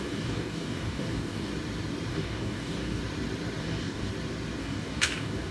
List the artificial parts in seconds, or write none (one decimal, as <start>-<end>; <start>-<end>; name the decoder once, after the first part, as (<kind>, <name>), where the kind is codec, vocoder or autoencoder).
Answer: 0.0-1.5 (codec, DAC); 2.1-3.0; 3.6-4.1; 4.6-5.5